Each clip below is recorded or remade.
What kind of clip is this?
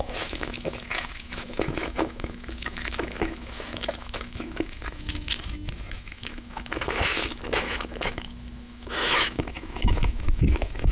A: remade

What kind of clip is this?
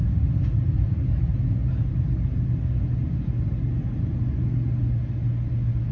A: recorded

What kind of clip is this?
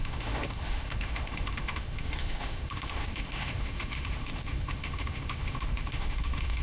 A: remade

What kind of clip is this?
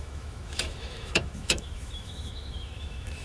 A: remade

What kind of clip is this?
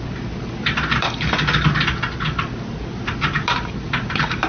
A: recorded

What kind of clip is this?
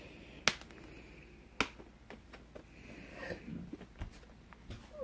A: recorded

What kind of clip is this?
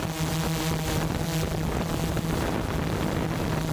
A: recorded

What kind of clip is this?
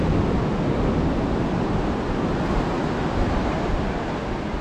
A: recorded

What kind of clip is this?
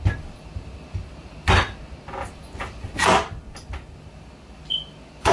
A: recorded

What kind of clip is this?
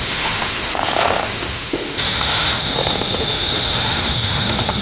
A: remade